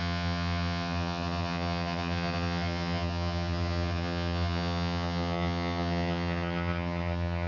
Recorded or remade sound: remade